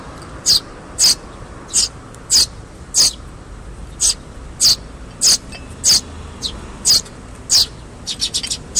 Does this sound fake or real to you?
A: real